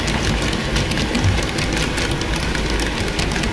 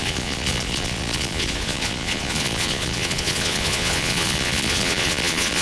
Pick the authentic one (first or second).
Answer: first